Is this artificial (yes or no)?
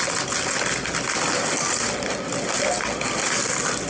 no